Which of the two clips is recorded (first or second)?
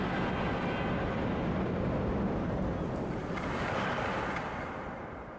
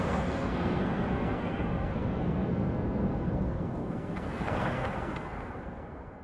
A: first